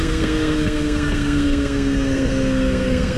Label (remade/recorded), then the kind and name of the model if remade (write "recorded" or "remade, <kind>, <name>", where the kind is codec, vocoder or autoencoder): remade, codec, SNAC